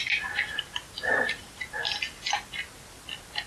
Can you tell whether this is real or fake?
real